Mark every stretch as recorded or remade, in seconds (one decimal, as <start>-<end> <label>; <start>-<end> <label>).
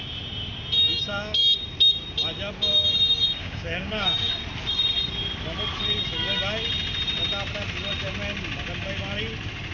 0.0-3.4 recorded; 3.4-4.3 remade; 4.3-9.7 recorded